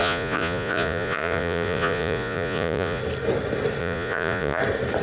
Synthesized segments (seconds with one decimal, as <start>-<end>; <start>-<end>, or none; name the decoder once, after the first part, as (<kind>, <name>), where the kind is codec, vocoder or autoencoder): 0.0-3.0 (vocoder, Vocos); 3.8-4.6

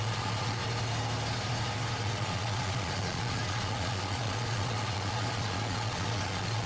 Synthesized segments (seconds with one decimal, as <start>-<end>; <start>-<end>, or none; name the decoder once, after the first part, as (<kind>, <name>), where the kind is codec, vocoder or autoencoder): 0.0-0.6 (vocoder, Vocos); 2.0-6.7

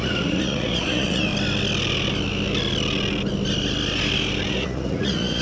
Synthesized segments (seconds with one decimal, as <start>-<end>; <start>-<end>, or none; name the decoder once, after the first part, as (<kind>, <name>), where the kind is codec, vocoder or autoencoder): 0.0-1.3 (vocoder, Vocos); 4.5-5.4

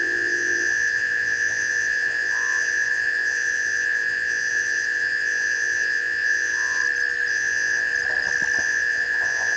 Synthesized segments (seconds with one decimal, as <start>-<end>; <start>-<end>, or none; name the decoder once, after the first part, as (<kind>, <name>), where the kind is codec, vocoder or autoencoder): 0.0-6.8 (vocoder, Vocos); 7.3-7.9; 8.6-9.6